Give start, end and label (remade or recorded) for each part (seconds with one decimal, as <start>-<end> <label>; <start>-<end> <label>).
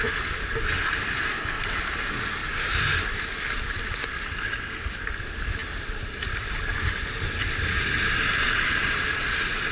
0.0-2.4 recorded; 2.4-3.7 remade; 3.7-9.7 recorded